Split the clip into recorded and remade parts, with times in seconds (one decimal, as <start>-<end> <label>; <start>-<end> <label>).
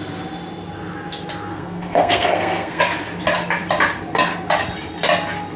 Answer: 0.0-1.5 recorded; 1.5-2.8 remade; 2.8-5.6 recorded